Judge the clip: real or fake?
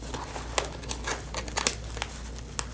real